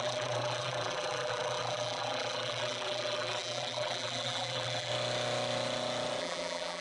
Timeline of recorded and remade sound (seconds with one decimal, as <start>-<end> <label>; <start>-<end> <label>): 0.0-4.9 remade; 4.9-6.2 recorded; 6.2-6.8 remade